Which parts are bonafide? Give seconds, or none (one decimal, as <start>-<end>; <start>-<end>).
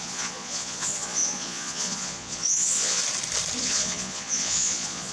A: 3.0-3.6